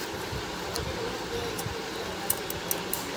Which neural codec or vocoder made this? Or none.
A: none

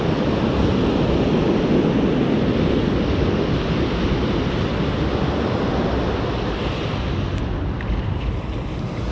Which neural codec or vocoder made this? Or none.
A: none